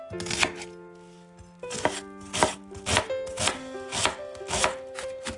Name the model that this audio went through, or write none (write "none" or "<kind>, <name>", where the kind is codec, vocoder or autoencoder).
none